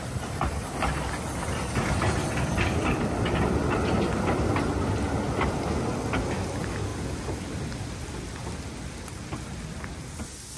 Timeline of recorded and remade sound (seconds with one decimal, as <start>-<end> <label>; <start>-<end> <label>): 0.0-10.6 recorded